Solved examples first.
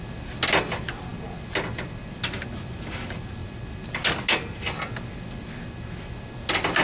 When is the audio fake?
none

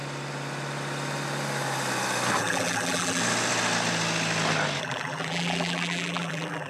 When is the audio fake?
2.4-3.2 (vocoder, BigVGAN v2); 4.8-6.7

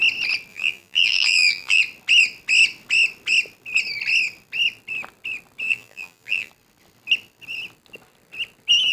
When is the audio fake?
0.5-1.8 (vocoder, BigVGAN v2); 5.7-6.5

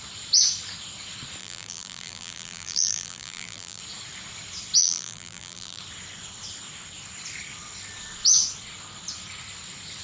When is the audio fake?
1.4-3.8 (vocoder, BigVGAN v2); 4.8-5.8

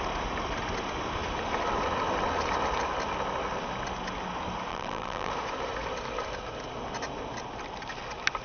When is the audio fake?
4.7-5.3 (vocoder, BigVGAN v2)